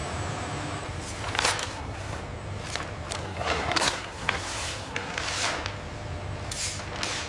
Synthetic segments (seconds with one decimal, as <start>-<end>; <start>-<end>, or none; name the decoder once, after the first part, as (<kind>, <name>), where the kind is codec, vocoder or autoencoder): 1.6-2.2 (codec, SNAC); 3.2-5.2